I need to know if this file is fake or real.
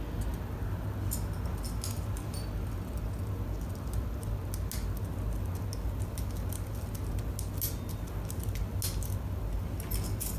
real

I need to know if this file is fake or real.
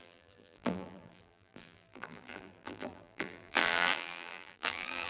fake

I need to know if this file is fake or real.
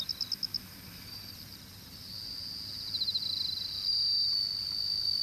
real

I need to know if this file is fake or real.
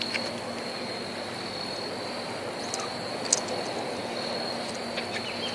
real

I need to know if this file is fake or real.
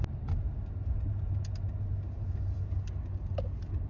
real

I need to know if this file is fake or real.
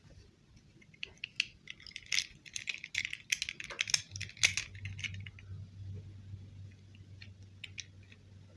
real